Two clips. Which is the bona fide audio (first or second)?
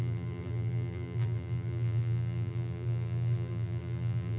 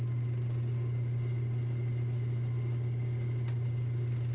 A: second